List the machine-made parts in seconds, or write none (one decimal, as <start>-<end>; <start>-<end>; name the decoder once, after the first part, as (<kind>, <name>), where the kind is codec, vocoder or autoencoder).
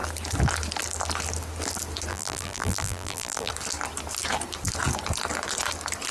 2.1-3.5 (vocoder, BigVGAN v2)